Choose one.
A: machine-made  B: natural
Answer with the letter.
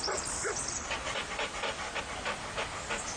B